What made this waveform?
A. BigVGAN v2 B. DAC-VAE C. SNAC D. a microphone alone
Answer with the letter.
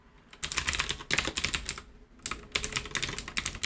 D